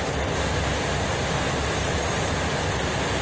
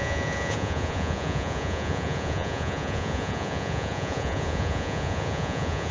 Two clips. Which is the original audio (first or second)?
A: first